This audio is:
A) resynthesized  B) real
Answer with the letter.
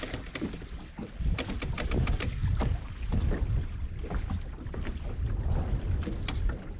A